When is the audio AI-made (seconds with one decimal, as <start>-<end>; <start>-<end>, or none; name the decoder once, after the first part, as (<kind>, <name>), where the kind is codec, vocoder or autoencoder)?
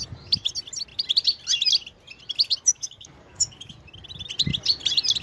2.7-3.7 (codec, DAC)